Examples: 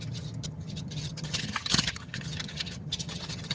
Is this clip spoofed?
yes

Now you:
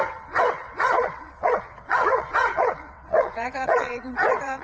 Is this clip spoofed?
yes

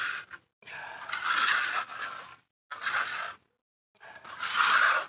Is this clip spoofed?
no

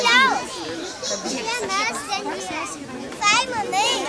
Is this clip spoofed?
no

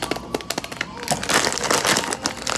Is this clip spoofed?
no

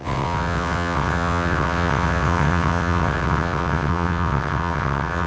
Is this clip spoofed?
yes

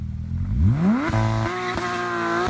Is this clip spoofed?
no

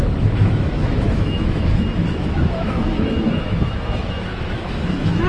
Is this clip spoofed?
yes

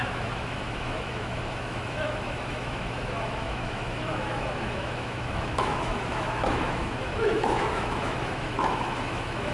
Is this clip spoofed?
yes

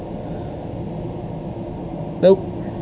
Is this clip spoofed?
no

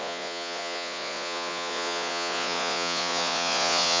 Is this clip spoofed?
yes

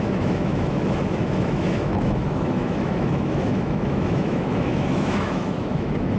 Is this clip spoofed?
yes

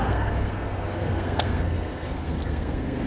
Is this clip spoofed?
yes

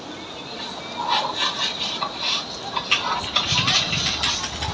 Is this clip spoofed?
no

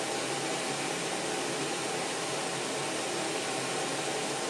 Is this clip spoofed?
no